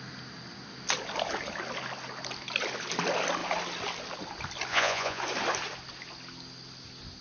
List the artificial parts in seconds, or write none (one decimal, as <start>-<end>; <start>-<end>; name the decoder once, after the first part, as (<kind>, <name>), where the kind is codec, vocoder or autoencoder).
4.7-5.2 (vocoder, Vocos)